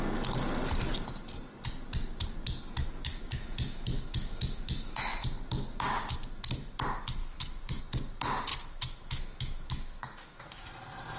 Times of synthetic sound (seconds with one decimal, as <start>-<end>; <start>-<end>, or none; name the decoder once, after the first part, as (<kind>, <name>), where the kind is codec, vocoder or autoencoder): 2.8-5.2 (autoencoder, DAC-VAE); 7.2-7.8; 8.5-10.4